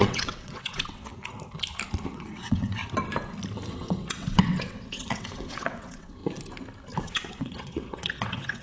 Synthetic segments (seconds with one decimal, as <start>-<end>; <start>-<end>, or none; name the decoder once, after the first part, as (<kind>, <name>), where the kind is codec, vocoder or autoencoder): 0.0-1.1 (vocoder, WaveNeXt); 2.1-2.8; 3.7-6.2; 7.0-8.6